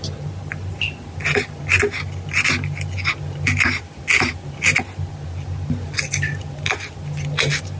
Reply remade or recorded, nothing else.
recorded